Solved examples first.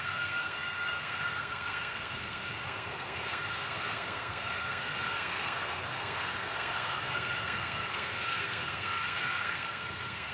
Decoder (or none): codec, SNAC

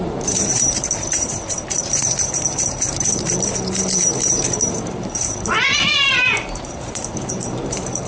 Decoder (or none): vocoder, BigVGAN v2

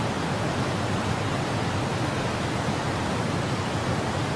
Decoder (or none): none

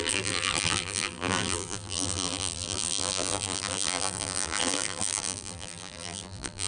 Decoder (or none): vocoder, BigVGAN v2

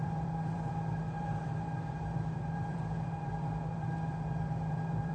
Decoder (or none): vocoder, BigVGAN v2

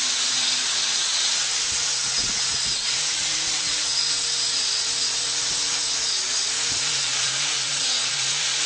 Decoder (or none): vocoder, Vocos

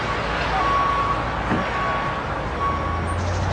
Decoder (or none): none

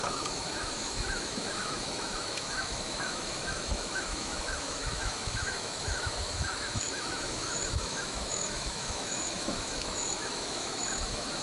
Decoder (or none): autoencoder, DAC-VAE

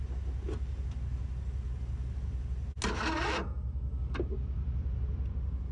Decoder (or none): none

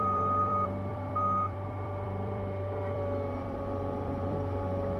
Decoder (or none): vocoder, BigVGAN v2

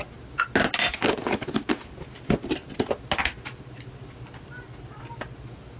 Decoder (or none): none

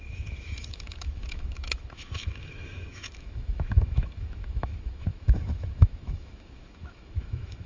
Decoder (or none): autoencoder, DAC-VAE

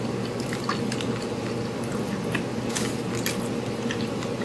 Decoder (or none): none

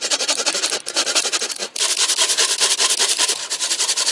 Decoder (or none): none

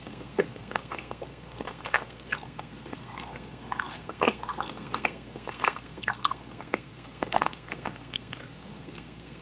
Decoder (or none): codec, SNAC